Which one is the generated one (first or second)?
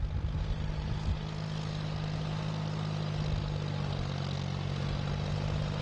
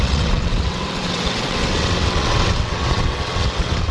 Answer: second